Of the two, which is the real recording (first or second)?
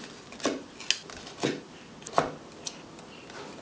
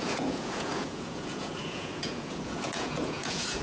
first